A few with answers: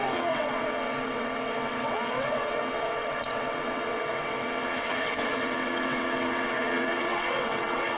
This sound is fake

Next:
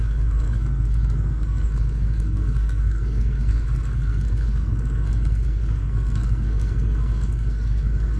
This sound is fake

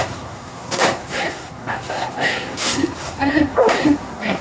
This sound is fake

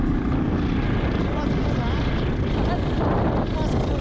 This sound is real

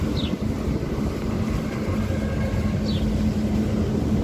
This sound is real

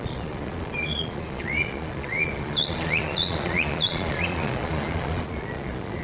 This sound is fake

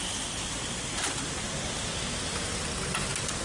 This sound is real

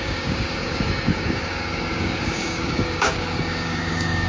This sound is fake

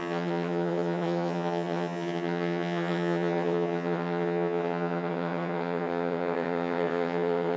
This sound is fake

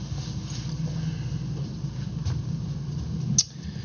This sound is real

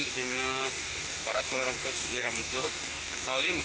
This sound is fake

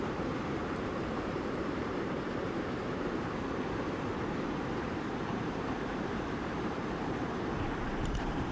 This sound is fake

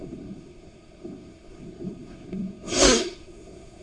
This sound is fake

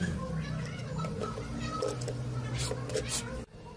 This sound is real